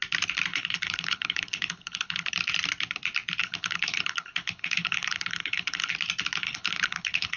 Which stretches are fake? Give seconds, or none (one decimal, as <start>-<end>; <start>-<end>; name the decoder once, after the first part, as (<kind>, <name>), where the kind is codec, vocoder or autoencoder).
0.5-2.3 (codec, HILCodec); 3.4-5.9; 6.4-7.4